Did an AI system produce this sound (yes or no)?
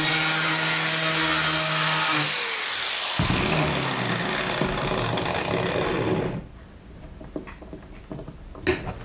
no